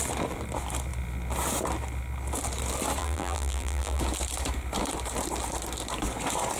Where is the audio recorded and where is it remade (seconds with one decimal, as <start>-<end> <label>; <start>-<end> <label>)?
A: 0.0-3.0 recorded; 3.0-4.0 remade; 4.0-6.6 recorded